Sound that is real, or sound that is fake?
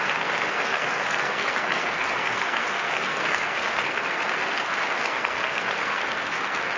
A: fake